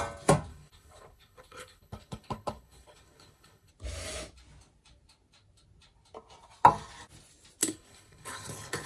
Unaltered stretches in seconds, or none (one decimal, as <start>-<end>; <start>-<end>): 0.0-0.5; 3.7-7.6